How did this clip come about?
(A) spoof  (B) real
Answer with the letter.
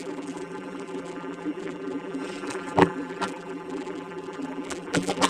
A